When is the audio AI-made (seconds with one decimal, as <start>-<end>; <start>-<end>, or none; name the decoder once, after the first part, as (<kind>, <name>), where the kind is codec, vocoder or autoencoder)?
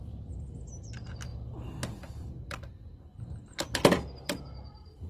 0.0-1.3 (vocoder, BigVGAN v2); 2.1-5.1